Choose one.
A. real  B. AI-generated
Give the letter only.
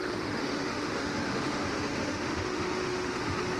B